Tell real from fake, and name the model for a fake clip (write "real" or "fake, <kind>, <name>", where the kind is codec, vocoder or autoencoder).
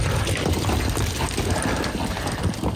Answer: real